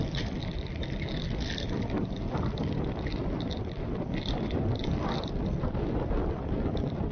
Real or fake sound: fake